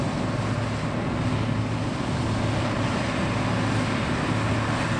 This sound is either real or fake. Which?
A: real